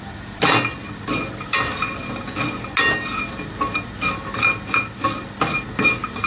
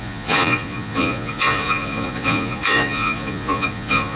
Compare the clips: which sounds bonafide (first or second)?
first